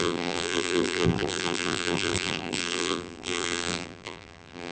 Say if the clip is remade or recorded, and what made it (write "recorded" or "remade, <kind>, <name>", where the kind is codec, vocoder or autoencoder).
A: remade, vocoder, BigVGAN v2